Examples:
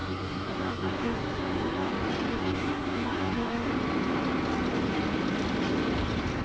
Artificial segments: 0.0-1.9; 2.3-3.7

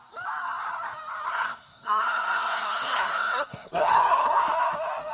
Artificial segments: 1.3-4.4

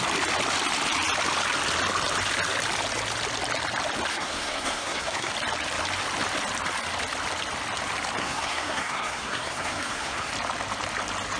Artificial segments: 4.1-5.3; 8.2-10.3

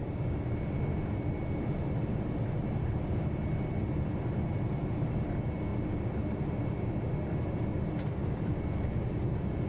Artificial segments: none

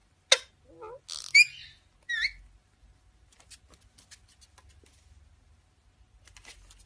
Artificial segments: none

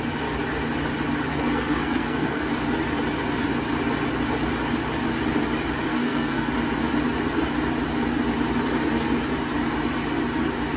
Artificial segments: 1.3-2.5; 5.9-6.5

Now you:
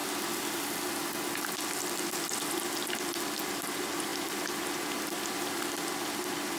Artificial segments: none

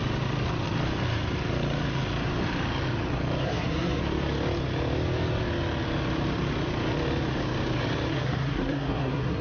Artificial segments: 3.4-4.0; 8.1-9.4